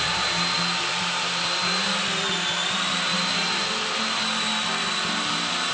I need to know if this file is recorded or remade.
remade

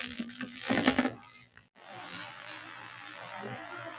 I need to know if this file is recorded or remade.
remade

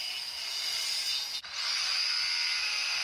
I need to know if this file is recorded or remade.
recorded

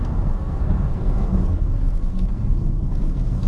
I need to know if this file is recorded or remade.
remade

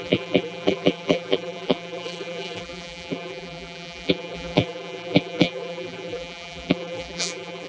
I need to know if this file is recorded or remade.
remade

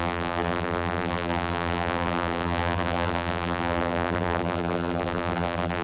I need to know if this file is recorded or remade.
remade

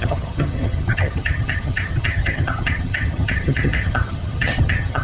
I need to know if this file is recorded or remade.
remade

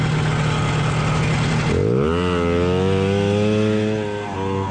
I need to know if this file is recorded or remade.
recorded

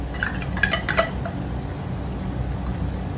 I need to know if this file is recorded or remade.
recorded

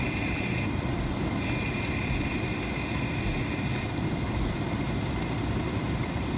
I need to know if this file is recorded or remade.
recorded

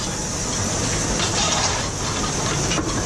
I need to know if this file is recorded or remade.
recorded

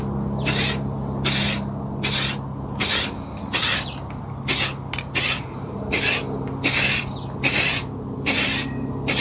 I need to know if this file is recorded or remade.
recorded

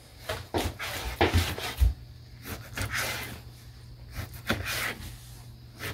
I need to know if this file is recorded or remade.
recorded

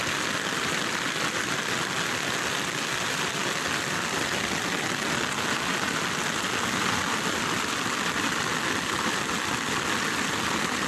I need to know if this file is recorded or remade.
recorded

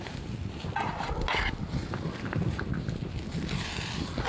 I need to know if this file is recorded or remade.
recorded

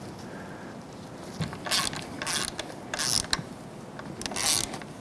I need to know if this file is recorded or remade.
recorded